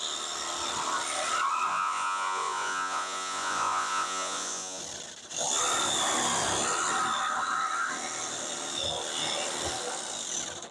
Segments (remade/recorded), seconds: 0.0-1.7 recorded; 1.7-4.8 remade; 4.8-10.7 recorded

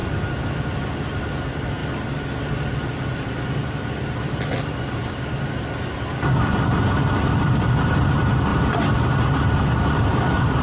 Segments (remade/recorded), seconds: 0.0-1.8 remade; 1.8-2.9 recorded; 2.9-8.5 remade; 8.5-10.0 recorded; 10.0-10.6 remade